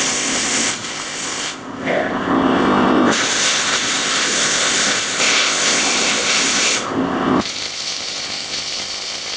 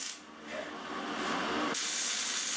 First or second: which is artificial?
first